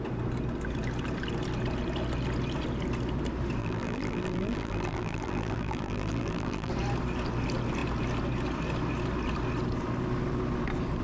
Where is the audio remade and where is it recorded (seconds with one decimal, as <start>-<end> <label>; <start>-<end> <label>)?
0.0-3.6 recorded; 3.6-6.7 remade; 6.7-11.0 recorded